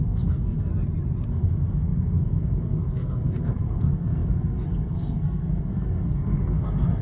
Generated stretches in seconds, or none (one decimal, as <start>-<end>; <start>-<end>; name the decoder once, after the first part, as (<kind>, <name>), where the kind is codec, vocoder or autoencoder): 0.0-0.7 (codec, SNAC); 1.3-7.0